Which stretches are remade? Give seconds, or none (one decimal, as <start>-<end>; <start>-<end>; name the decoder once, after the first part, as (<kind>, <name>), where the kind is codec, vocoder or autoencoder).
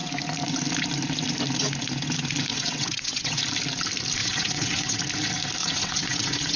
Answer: 2.5-3.4 (vocoder, WaveNeXt); 4.2-5.0; 5.6-6.6